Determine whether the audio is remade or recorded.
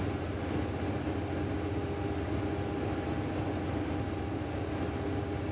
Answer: recorded